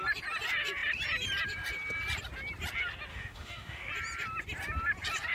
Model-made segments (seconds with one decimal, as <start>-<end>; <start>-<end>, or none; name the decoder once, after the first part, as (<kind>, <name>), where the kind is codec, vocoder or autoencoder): 3.1-3.9 (autoencoder, DAC-VAE)